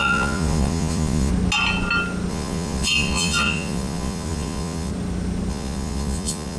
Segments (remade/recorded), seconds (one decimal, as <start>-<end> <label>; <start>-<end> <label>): 0.0-1.3 remade; 1.3-2.3 recorded; 2.3-4.9 remade; 4.9-5.5 recorded; 5.5-6.6 remade